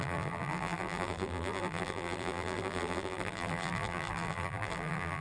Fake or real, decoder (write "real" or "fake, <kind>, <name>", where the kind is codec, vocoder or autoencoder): fake, vocoder, BigVGAN v2